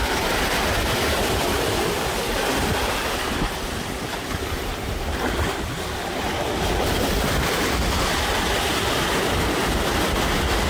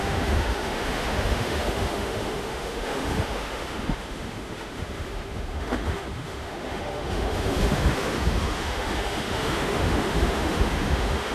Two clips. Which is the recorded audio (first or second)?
first